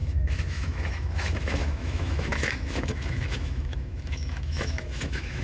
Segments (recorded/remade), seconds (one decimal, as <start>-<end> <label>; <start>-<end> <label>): 0.0-5.4 remade